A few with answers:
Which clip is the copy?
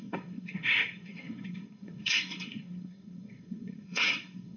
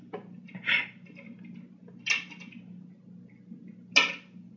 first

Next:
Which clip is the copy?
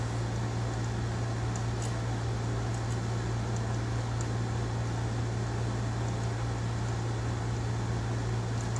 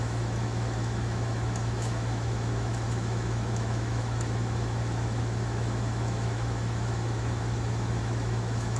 second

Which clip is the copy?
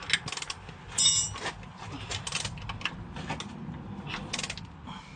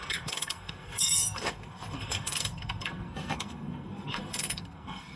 second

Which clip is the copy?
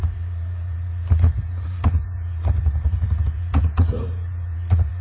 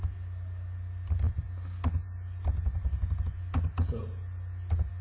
first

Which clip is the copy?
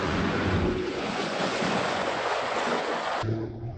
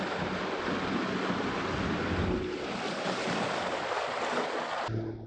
first